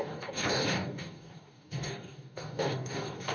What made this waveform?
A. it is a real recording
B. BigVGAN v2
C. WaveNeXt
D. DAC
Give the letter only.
D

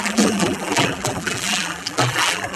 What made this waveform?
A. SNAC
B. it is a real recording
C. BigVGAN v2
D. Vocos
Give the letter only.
C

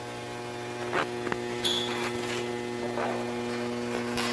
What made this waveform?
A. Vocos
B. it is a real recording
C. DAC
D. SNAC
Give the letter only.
B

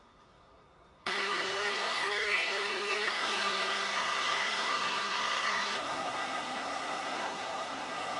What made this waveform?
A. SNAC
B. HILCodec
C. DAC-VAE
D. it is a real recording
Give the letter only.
A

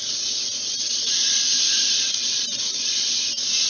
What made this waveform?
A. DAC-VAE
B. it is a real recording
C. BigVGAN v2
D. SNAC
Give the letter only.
C